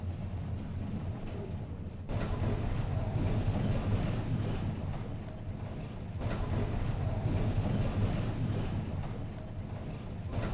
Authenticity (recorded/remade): recorded